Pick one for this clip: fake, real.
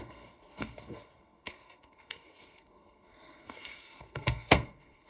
fake